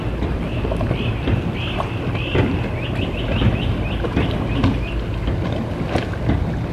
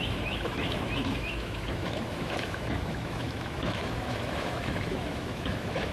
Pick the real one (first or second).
first